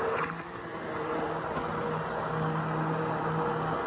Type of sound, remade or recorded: recorded